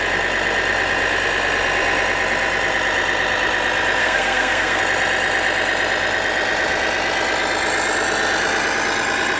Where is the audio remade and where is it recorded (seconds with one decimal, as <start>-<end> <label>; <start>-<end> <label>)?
0.0-4.0 recorded; 4.0-4.8 remade; 4.8-9.4 recorded